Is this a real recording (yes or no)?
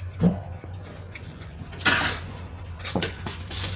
no